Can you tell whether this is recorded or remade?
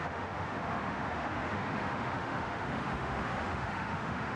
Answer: remade